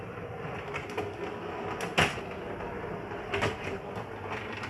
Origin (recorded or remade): recorded